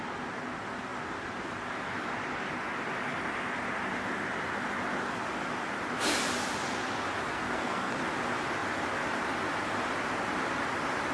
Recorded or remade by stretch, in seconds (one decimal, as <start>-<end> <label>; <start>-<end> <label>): 0.0-7.3 recorded; 7.3-8.0 remade; 8.0-11.1 recorded